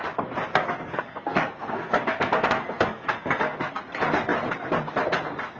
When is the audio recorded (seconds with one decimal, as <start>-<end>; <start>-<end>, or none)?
0.0-0.5; 3.8-5.6